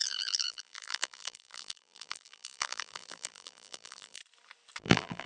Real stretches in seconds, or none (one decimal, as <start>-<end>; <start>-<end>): 4.2-4.8

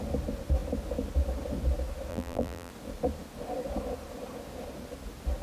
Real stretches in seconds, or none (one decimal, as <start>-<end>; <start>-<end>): 0.0-2.1; 2.7-5.4

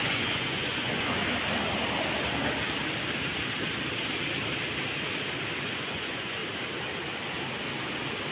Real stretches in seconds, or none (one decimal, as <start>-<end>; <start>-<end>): 1.2-5.6; 6.4-8.3

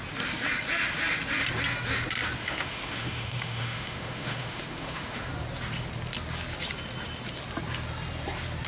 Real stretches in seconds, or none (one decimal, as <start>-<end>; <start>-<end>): 0.0-2.4; 5.3-8.7

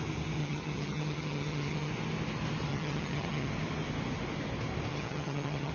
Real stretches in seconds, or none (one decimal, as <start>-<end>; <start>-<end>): 0.0-0.4; 1.9-2.7; 3.5-4.9

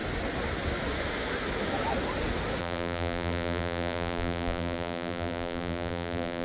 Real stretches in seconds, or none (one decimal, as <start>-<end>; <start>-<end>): 0.0-2.6